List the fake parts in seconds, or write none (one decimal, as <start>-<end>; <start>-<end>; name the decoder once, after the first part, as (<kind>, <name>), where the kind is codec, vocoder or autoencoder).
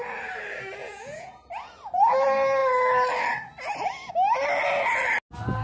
0.8-1.5 (vocoder, Vocos)